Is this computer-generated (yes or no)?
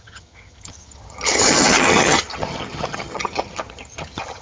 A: yes